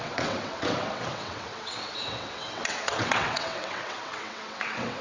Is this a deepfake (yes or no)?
yes